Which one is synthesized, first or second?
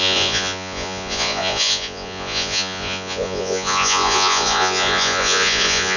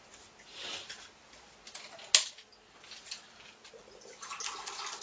first